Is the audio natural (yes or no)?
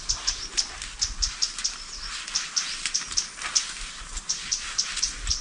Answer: yes